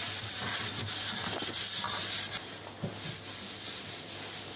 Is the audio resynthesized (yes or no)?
no